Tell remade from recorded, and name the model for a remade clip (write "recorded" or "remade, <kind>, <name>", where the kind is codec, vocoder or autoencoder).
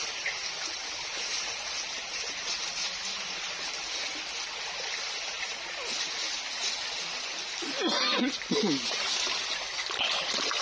recorded